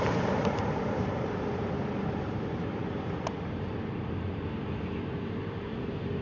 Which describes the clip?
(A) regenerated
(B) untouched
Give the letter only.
A